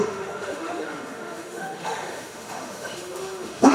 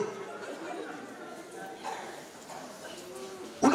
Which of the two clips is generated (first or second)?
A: first